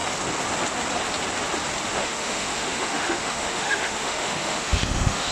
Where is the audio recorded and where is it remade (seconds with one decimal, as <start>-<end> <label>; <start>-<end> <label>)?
0.0-2.0 recorded; 2.0-5.3 remade